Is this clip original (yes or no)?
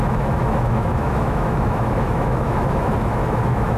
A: no